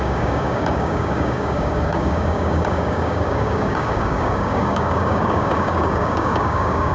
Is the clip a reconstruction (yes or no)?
yes